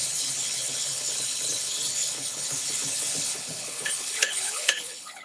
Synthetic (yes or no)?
yes